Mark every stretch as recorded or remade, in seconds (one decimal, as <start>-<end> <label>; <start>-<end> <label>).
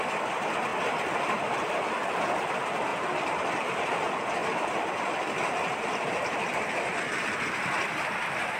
0.0-0.7 remade; 0.7-2.5 recorded; 2.5-2.9 remade; 2.9-3.5 recorded; 3.5-8.6 remade